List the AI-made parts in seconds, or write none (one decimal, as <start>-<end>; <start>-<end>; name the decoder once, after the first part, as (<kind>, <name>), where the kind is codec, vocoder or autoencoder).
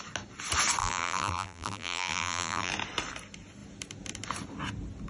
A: 0.8-2.7 (vocoder, BigVGAN v2)